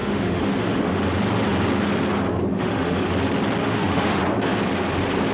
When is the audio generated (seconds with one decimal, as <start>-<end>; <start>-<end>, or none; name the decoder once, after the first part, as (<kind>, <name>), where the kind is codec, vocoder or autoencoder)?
0.0-1.0 (autoencoder, DAC-VAE); 2.5-3.1; 3.6-4.2